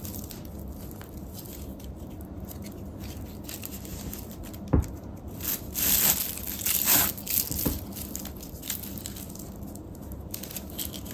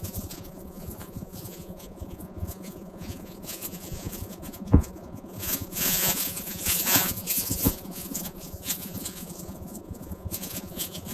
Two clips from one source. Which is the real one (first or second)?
first